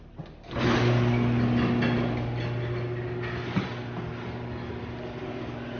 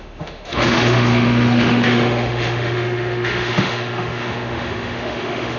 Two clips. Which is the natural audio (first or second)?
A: first